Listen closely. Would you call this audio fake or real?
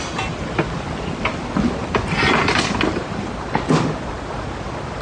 real